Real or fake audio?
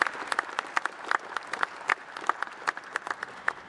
real